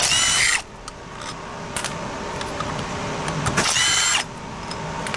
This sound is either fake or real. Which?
real